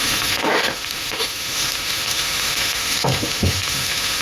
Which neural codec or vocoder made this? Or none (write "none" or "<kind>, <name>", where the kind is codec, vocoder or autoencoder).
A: autoencoder, DAC-VAE